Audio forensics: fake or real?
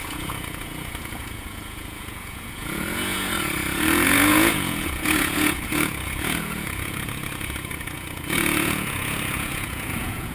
fake